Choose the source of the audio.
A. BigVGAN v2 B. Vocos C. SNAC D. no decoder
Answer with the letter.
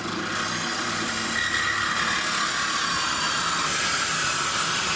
D